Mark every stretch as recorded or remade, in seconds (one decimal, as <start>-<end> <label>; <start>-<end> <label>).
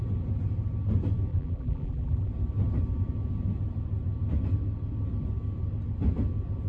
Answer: 0.0-1.3 recorded; 1.3-2.3 remade; 2.3-6.7 recorded